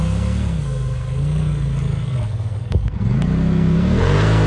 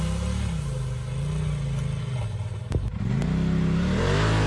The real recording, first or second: second